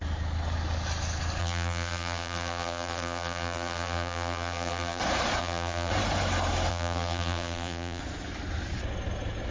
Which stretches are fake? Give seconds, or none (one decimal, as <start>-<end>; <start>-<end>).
1.4-5.0; 5.4-5.9; 6.7-8.0